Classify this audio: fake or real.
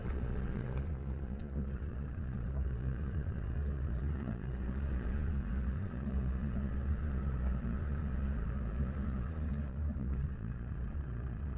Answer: fake